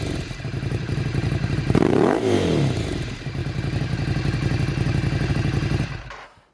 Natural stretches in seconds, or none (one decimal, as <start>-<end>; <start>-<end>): 3.4-5.3